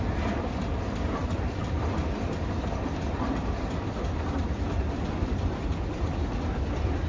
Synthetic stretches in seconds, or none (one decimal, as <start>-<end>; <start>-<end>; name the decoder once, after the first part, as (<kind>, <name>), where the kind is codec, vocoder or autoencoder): 0.0-7.1 (vocoder, BigVGAN v2)